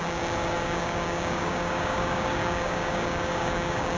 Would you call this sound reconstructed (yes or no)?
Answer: yes